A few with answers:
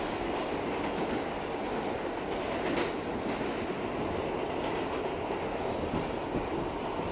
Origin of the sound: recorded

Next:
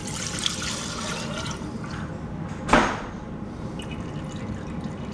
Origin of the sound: recorded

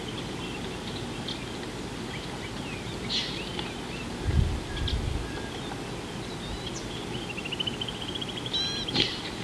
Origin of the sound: recorded